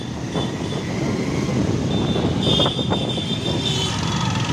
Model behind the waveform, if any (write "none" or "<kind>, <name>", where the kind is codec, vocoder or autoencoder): none